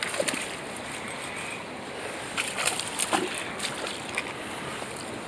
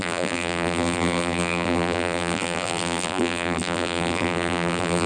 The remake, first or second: second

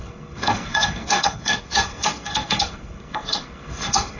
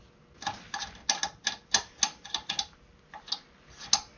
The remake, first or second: first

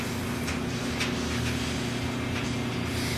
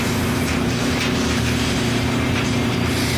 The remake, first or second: second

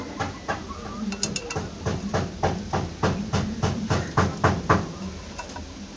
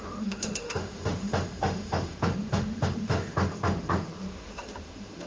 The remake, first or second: second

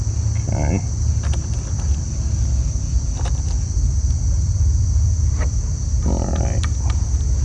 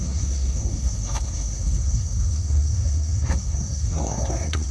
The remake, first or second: second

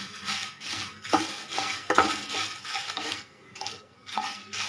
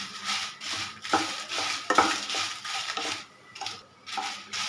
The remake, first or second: first